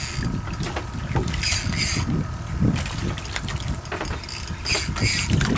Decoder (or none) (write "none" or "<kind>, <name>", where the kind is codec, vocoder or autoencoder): none